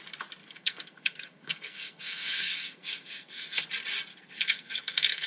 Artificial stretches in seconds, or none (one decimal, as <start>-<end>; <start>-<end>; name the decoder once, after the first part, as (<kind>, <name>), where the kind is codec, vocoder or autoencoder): 0.4-3.6 (codec, SNAC); 4.1-5.3